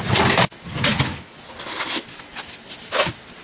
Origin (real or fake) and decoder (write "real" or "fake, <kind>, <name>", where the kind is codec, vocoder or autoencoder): real